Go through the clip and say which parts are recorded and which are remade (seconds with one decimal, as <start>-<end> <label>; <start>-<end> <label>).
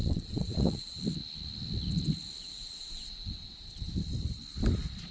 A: 0.0-1.0 remade; 1.0-2.4 recorded; 2.4-3.7 remade; 3.7-5.1 recorded